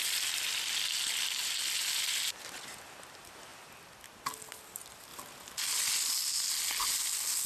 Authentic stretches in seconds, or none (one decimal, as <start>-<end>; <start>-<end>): 0.0-7.5